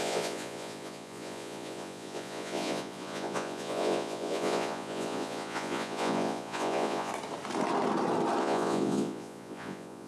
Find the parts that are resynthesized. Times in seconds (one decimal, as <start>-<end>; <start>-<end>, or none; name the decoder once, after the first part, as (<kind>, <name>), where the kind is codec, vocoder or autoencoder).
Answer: 0.0-7.1 (vocoder, Vocos); 8.4-10.1